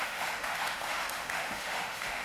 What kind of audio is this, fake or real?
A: fake